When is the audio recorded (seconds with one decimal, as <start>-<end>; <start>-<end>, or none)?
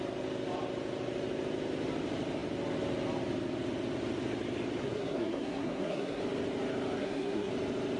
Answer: 0.0-4.8; 6.2-7.0; 7.5-8.0